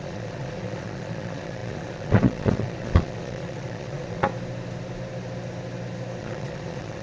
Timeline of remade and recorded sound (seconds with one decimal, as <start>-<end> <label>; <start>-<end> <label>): 0.0-4.3 remade; 4.3-6.2 recorded; 6.2-7.0 remade